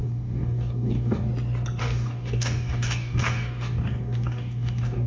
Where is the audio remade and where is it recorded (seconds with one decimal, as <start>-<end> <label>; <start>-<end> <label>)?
0.0-1.3 remade; 1.3-1.8 recorded; 1.8-5.1 remade